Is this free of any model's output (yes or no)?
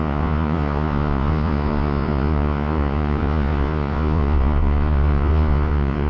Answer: no